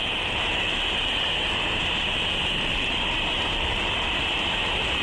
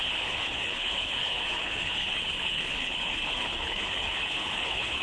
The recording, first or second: first